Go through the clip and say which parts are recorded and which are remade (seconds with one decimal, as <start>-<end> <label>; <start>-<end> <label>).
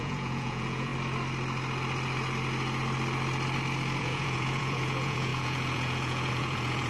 0.0-0.9 remade; 0.9-4.0 recorded; 4.0-6.9 remade